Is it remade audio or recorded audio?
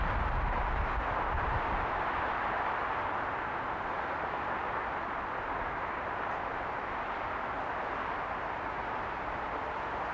recorded